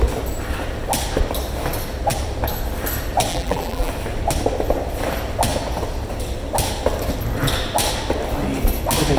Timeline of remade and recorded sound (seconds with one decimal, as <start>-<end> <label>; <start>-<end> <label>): 0.0-3.3 recorded; 3.3-3.9 remade; 3.9-9.2 recorded